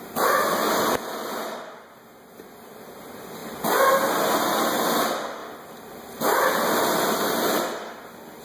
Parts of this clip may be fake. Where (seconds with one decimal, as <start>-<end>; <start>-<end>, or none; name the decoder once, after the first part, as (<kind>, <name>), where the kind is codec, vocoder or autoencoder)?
5.4-7.3 (vocoder, BigVGAN v2)